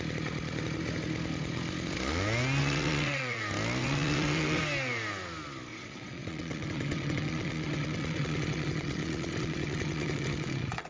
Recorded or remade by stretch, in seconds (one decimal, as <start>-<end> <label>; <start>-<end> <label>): 0.0-2.6 recorded; 2.6-3.4 remade; 3.4-3.8 recorded; 3.8-4.6 remade; 4.6-5.7 recorded; 5.7-10.9 remade